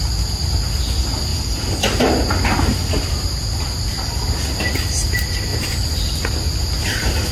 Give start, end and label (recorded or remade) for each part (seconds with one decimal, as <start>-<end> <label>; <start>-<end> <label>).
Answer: 0.0-5.5 recorded; 5.5-7.3 remade